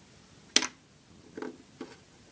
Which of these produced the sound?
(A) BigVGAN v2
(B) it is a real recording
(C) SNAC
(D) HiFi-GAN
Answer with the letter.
B